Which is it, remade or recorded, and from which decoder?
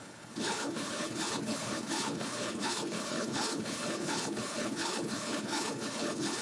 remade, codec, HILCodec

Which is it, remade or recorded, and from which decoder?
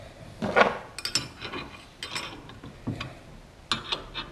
recorded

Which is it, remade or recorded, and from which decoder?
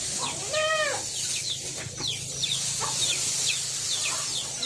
recorded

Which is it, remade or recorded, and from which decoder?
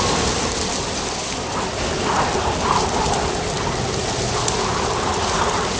recorded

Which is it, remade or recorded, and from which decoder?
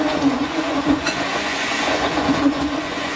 remade, vocoder, Vocos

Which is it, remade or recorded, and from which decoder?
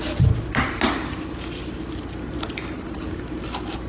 recorded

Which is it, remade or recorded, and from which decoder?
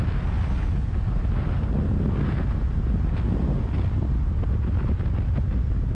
recorded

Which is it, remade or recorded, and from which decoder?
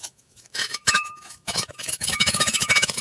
remade, autoencoder, DAC-VAE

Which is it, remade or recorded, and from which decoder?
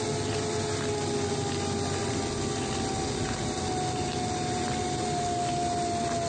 recorded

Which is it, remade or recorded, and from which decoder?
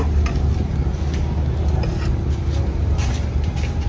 recorded